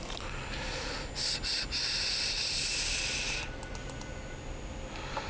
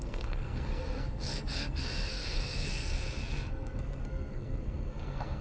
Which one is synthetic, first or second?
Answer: second